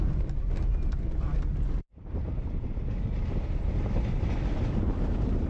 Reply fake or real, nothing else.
real